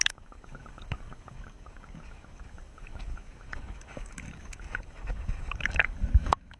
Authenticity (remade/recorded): remade